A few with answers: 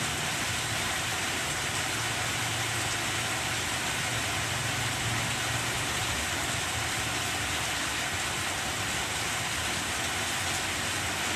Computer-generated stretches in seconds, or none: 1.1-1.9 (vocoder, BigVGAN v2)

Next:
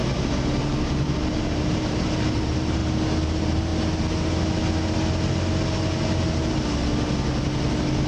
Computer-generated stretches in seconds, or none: 0.6-2.8 (vocoder, BigVGAN v2); 3.3-3.7